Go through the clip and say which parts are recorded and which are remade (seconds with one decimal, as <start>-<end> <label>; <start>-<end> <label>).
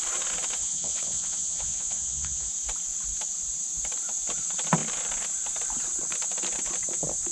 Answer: 0.0-0.6 recorded; 0.6-2.5 remade; 2.5-7.3 recorded